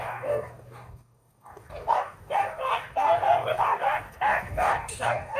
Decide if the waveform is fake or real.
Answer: fake